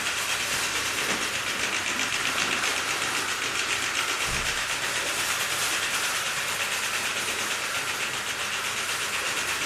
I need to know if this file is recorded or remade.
recorded